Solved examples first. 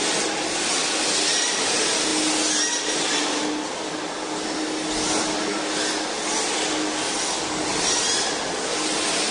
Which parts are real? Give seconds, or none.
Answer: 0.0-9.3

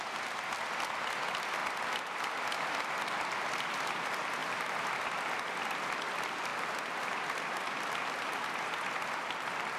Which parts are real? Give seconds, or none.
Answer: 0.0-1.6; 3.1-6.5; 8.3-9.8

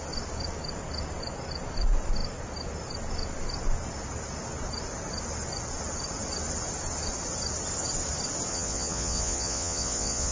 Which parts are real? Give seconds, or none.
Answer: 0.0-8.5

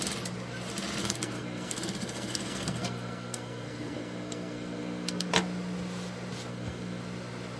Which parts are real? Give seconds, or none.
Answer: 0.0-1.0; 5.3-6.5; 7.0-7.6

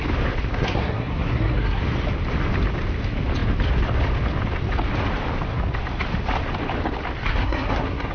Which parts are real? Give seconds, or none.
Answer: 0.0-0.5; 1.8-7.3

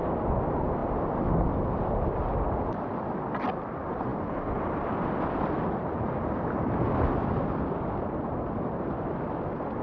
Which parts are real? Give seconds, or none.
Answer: 0.0-9.8